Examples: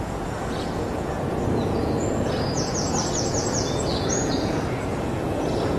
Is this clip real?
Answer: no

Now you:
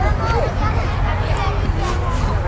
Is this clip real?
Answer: yes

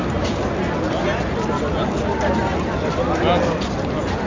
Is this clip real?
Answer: yes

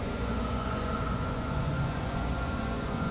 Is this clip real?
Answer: no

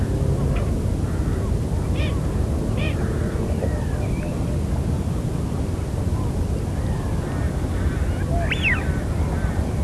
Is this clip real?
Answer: yes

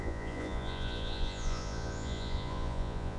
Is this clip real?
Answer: no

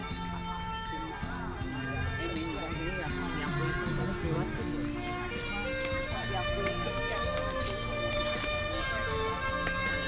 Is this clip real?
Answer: yes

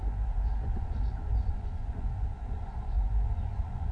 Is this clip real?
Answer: no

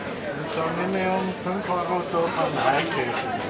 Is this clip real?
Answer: yes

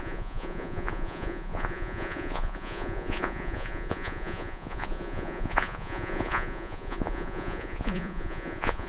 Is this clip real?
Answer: no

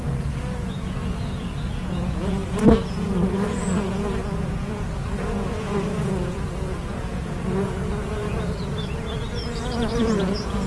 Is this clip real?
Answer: no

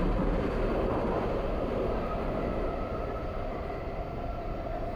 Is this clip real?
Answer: yes